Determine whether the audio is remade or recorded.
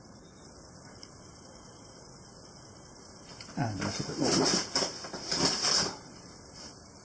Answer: recorded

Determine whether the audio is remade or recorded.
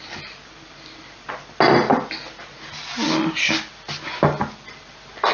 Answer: recorded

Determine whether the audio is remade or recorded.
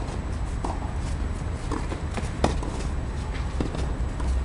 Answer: recorded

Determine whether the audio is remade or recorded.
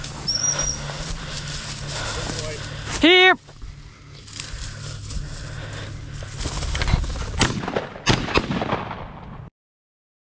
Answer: recorded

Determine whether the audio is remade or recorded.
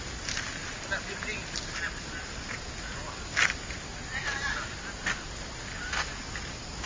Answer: recorded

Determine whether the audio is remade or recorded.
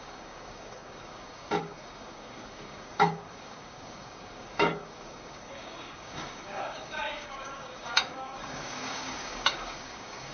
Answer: remade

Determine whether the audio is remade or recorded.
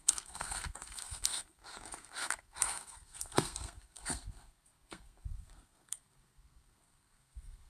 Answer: remade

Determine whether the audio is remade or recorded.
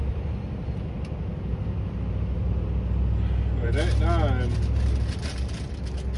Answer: recorded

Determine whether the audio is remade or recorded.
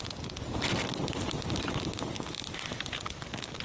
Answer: recorded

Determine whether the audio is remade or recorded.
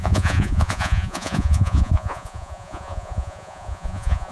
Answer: remade